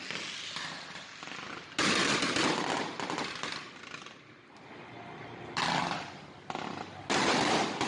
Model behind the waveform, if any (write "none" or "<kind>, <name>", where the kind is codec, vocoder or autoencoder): none